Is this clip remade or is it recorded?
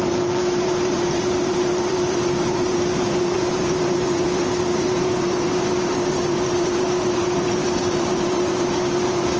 remade